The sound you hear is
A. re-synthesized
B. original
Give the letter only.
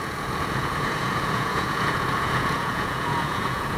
A